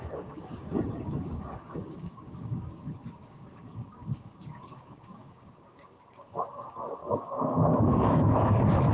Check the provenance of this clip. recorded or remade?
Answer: remade